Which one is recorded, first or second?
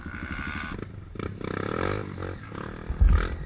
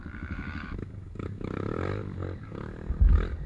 first